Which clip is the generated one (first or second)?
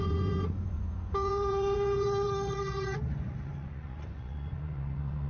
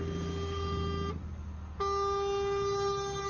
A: first